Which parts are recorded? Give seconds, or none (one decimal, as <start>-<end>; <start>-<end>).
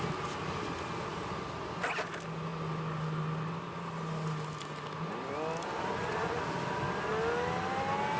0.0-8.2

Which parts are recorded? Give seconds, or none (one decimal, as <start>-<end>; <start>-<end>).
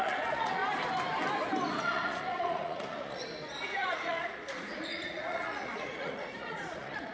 0.6-1.6; 3.2-3.7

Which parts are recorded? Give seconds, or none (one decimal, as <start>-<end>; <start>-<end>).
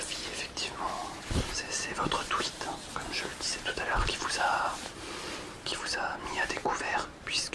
none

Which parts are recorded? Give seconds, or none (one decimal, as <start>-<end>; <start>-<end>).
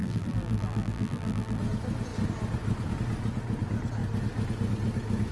1.6-5.3